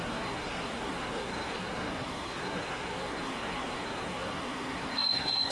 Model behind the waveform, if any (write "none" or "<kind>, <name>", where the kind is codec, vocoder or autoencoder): codec, SNAC